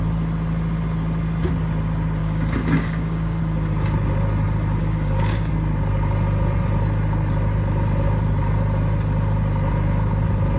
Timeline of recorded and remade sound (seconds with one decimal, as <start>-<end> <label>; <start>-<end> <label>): 0.0-2.2 recorded; 2.2-3.4 remade; 3.4-4.8 recorded; 4.8-5.5 remade; 5.5-10.6 recorded

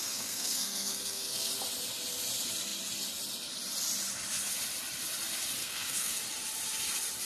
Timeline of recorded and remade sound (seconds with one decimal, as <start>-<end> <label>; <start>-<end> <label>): 0.0-1.5 remade; 1.5-5.6 recorded; 5.6-6.2 remade; 6.2-7.3 recorded

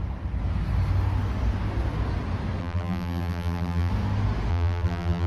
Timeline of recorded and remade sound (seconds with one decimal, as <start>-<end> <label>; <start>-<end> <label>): 0.0-2.6 recorded; 2.6-3.9 remade; 3.9-4.5 recorded; 4.5-5.3 remade

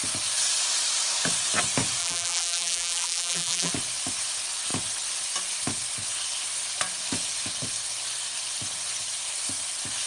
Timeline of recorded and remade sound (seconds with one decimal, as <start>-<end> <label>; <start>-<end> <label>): 0.0-2.0 recorded; 2.0-3.7 remade; 3.7-10.1 recorded

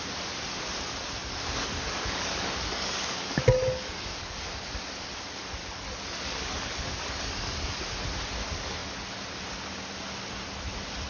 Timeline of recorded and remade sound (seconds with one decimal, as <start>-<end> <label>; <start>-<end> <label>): 0.0-1.2 recorded; 1.2-4.5 remade; 4.5-5.6 recorded; 5.6-7.7 remade; 7.7-11.1 recorded

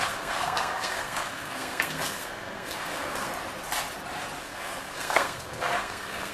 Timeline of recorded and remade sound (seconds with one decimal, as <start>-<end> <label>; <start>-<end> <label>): 0.0-3.3 remade; 3.3-4.4 recorded; 4.4-6.3 remade

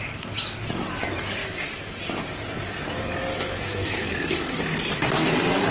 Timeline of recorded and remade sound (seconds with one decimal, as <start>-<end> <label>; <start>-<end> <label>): 0.0-1.4 recorded; 1.4-2.0 remade; 2.0-3.3 recorded; 3.3-4.6 remade; 4.6-5.7 recorded

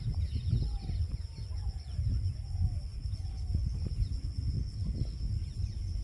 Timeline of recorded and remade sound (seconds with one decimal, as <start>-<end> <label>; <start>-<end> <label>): 0.0-6.0 recorded